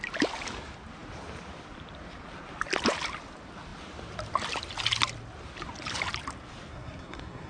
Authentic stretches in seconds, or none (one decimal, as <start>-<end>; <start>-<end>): 0.0-6.7